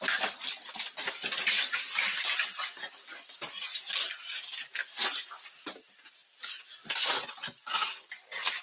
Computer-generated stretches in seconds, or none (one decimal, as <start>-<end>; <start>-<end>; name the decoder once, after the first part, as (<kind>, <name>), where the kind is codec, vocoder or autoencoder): none